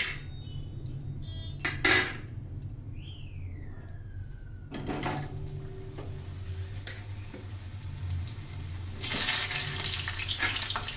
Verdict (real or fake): real